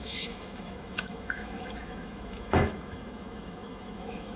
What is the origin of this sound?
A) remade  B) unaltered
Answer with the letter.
A